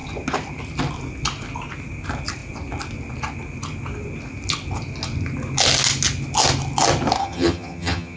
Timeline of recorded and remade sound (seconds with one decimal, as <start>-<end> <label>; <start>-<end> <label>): 0.0-7.2 recorded; 7.2-8.2 remade